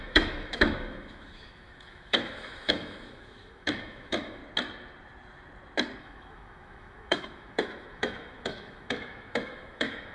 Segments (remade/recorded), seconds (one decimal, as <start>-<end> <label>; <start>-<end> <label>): 0.0-4.4 remade; 4.4-6.0 recorded; 6.0-10.1 remade